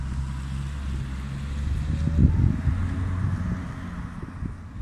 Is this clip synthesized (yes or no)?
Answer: no